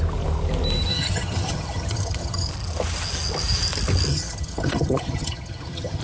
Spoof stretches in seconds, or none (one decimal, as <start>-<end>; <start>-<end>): 0.9-2.5; 4.1-6.0

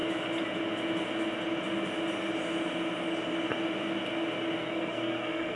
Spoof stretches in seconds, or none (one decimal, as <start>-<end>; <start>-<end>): 4.6-5.6

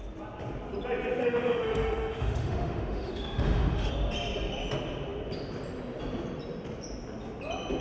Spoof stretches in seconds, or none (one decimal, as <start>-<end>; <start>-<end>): 1.2-3.9

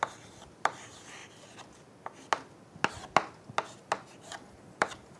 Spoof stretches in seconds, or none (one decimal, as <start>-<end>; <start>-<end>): none

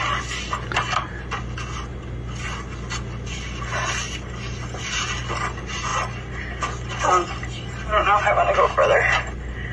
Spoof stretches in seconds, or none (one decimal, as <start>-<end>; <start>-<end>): none

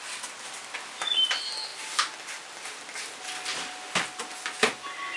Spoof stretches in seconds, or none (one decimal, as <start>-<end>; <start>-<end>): none

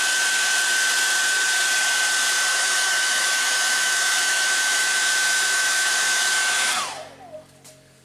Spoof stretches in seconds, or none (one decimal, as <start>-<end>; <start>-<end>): 2.5-6.7